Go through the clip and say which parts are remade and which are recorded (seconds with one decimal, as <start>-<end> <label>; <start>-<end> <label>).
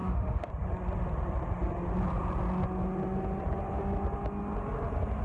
0.0-0.5 remade; 0.5-5.2 recorded